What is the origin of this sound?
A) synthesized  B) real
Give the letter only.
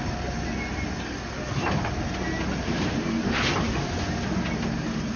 B